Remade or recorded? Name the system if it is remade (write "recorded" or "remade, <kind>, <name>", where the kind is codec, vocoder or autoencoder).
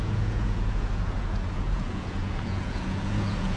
remade, vocoder, Vocos